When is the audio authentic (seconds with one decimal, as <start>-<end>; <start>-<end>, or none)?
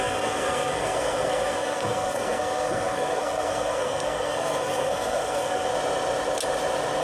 5.7-7.0